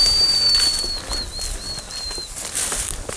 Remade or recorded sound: recorded